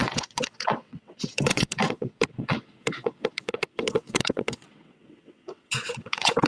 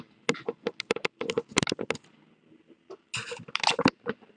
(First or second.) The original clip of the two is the second